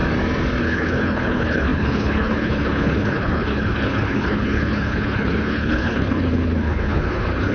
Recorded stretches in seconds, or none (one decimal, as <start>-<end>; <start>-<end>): 0.0-0.6